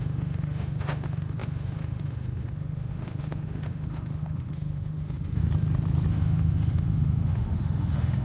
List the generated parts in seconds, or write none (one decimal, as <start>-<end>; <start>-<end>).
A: 0.0-5.4; 6.1-8.2